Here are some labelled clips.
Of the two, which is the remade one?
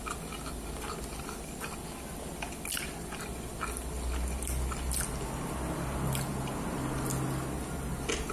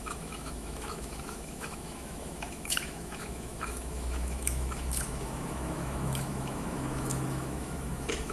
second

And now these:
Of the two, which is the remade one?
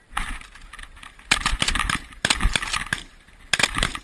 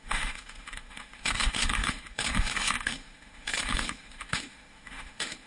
second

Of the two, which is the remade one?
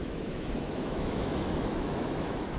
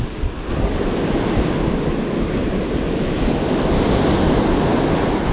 first